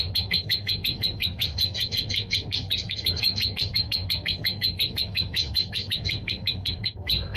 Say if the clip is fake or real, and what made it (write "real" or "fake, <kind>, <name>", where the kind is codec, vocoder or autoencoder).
fake, codec, SNAC